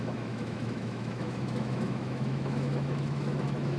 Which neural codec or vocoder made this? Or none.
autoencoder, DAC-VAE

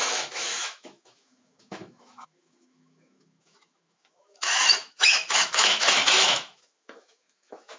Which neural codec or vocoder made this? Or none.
autoencoder, DAC-VAE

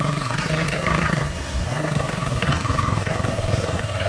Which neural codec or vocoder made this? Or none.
codec, SNAC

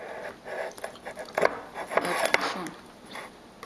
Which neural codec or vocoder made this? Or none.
none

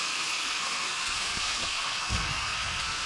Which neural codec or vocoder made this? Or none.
codec, SNAC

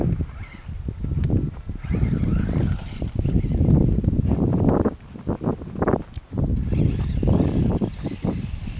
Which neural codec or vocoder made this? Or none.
none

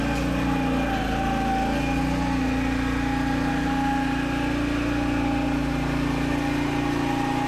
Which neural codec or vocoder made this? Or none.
none